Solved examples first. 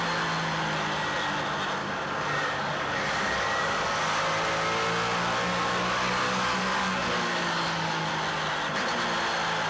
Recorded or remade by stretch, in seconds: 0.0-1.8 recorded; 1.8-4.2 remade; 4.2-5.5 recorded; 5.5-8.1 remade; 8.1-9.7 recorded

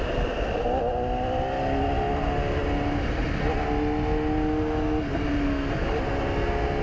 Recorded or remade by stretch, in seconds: 0.0-6.8 recorded

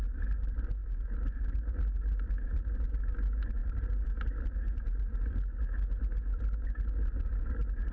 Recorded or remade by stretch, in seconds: 0.0-7.9 recorded

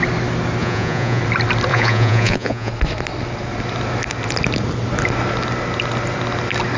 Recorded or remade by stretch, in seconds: 0.0-0.6 recorded; 0.6-1.2 remade; 1.2-1.7 recorded; 1.7-2.7 remade; 2.7-6.8 recorded

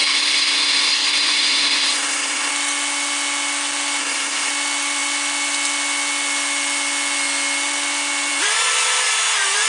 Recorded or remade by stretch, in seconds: 0.0-2.5 remade; 2.5-4.0 recorded; 4.0-4.5 remade; 4.5-9.7 recorded

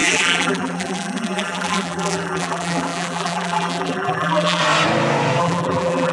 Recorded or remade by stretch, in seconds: 0.0-4.6 remade; 4.6-5.4 recorded; 5.4-6.1 remade

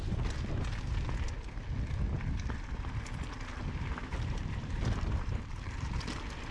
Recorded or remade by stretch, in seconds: 0.0-4.0 recorded; 4.0-6.1 remade; 6.1-6.5 recorded

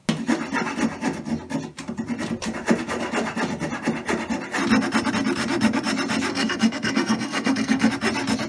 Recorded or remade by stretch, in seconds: 0.0-6.3 recorded; 6.3-7.9 remade; 7.9-8.5 recorded